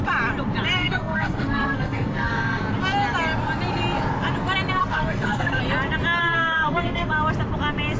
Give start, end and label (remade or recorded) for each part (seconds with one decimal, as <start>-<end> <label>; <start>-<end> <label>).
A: 0.0-0.8 recorded; 0.8-2.6 remade; 2.6-4.8 recorded; 4.8-5.6 remade; 5.6-6.2 recorded; 6.2-7.1 remade; 7.1-8.0 recorded